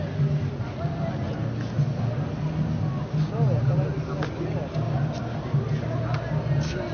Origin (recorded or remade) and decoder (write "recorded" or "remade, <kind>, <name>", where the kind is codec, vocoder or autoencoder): recorded